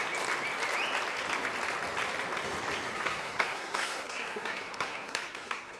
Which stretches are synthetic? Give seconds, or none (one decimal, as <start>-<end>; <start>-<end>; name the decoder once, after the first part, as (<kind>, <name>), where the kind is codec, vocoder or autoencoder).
2.9-5.8 (codec, SNAC)